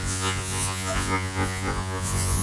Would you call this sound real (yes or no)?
no